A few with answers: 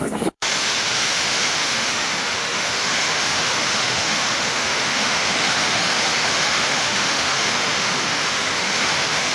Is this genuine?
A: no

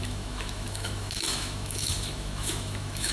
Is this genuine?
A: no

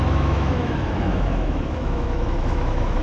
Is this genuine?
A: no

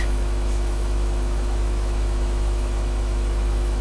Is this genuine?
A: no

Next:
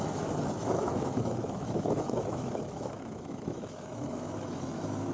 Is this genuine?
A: no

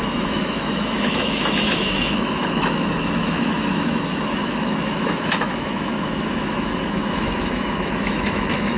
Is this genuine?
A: no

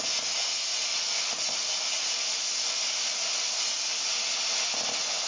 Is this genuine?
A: yes